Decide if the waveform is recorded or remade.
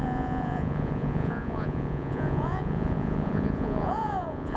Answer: remade